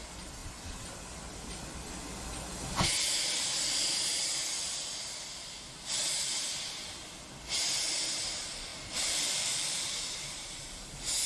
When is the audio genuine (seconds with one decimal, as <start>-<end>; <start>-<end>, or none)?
0.0-8.7; 10.9-11.3